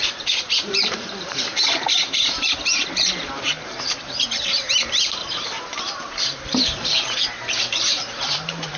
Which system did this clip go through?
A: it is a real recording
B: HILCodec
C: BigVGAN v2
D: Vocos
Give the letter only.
C